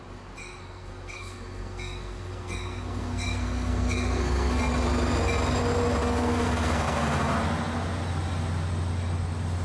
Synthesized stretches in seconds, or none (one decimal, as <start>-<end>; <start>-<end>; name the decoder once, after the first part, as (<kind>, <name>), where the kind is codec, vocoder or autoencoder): 0.4-4.6 (codec, SNAC); 6.0-7.3